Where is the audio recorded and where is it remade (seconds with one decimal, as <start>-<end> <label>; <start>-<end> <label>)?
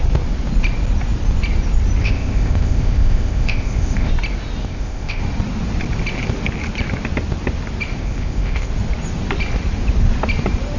0.0-2.0 recorded; 2.0-4.1 remade; 4.1-4.6 recorded; 4.6-5.2 remade; 5.2-8.0 recorded; 8.0-8.7 remade; 8.7-10.8 recorded